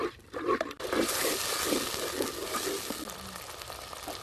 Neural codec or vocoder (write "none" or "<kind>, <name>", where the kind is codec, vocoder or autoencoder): none